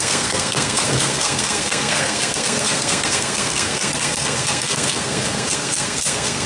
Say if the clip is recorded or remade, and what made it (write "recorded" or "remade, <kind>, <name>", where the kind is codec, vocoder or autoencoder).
remade, codec, SNAC